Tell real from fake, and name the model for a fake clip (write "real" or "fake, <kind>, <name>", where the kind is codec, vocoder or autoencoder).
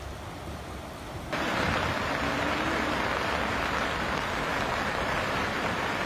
real